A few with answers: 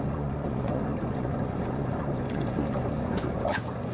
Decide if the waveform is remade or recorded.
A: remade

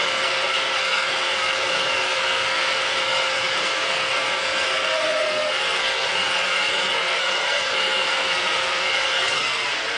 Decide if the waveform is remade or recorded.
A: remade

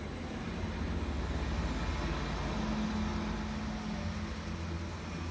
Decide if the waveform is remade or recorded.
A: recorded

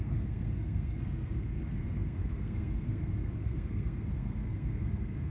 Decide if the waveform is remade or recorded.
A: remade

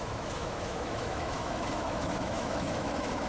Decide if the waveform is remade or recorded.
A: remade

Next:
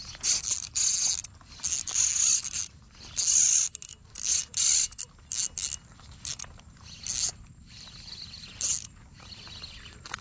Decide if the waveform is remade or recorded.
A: recorded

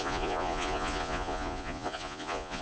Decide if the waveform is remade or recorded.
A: remade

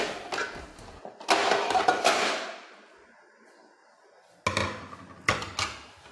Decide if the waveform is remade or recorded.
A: recorded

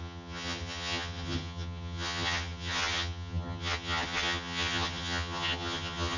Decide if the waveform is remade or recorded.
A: remade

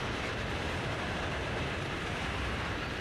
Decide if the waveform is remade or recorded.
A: remade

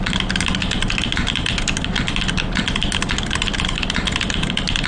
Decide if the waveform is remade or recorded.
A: recorded